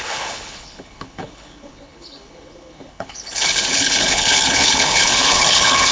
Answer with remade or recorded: remade